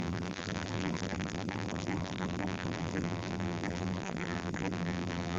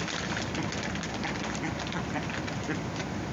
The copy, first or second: first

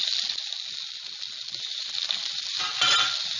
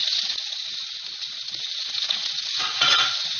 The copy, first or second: second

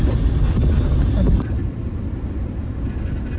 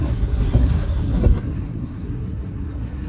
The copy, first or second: second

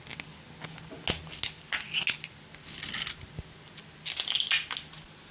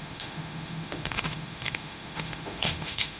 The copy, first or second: second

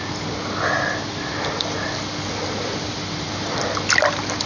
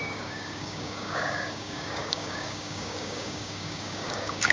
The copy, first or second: second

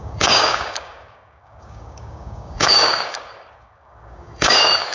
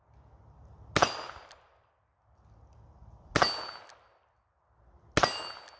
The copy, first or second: first